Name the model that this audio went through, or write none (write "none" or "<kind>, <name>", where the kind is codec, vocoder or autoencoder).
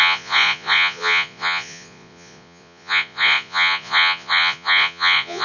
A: vocoder, Vocos